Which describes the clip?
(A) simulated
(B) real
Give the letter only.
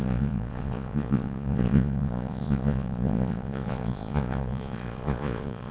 A